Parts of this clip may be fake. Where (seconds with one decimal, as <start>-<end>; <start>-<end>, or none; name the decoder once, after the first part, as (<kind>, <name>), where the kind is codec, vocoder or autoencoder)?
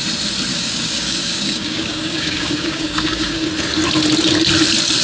0.5-3.5 (codec, DAC)